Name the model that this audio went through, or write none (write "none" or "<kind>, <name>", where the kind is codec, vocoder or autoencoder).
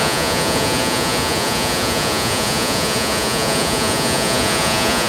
vocoder, Vocos